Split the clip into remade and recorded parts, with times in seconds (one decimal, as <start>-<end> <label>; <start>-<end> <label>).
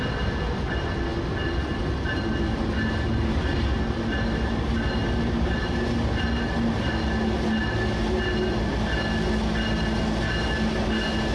0.0-11.3 recorded